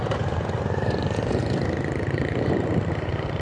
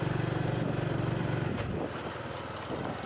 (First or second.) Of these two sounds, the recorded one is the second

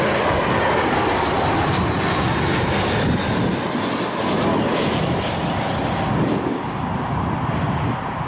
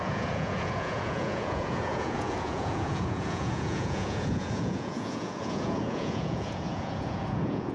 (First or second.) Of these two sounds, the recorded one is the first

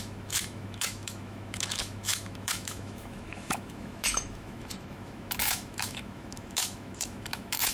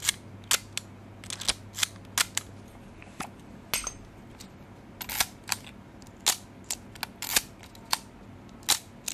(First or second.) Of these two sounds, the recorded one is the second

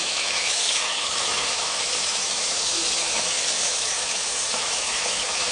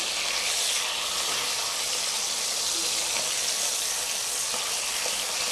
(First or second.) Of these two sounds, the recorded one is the second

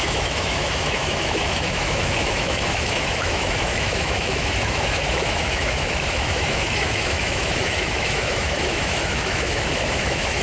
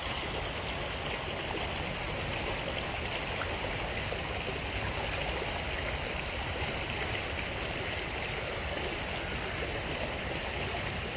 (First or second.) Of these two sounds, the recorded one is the second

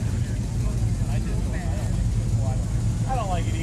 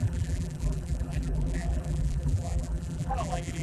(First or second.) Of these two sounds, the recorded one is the first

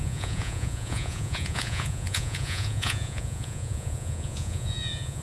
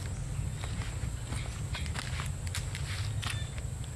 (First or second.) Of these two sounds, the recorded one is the second